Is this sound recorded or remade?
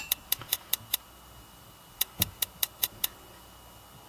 remade